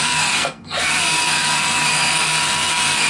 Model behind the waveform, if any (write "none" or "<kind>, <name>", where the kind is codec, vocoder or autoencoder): codec, SNAC